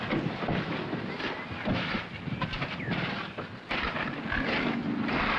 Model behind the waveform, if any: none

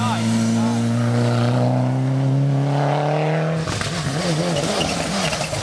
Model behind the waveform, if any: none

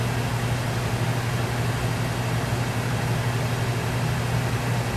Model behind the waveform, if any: none